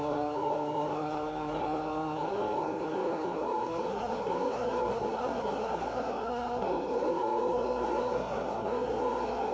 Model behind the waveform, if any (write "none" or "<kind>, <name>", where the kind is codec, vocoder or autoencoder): codec, SNAC